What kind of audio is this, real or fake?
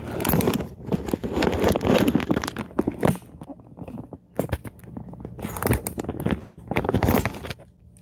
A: real